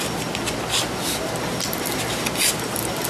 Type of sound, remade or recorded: recorded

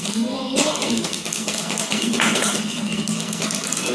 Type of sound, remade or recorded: remade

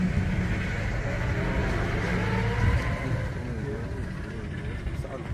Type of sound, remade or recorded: recorded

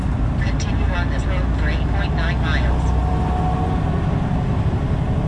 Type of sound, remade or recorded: recorded